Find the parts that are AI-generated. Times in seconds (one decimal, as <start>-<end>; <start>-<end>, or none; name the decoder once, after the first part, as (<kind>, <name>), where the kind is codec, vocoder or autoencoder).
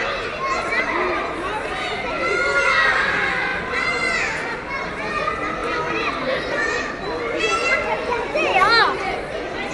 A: none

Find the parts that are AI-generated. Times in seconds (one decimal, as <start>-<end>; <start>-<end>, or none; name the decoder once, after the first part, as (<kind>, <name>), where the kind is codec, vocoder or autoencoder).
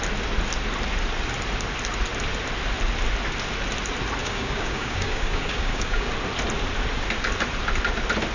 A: 4.2-6.1 (codec, DAC)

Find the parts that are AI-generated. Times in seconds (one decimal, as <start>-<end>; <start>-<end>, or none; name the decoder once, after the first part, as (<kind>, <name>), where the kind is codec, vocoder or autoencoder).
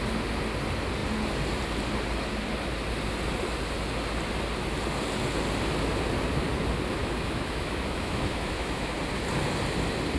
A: 7.0-9.0 (autoencoder, DAC-VAE)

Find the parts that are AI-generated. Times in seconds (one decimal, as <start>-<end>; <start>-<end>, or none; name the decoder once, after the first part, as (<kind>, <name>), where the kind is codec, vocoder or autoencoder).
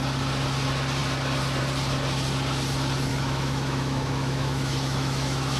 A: 3.1-5.6 (autoencoder, DAC-VAE)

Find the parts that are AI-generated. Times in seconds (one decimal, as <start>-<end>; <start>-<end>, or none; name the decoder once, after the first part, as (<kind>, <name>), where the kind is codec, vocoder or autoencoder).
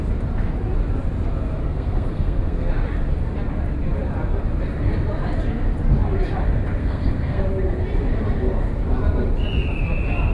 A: 1.6-2.7 (codec, SNAC); 6.8-7.4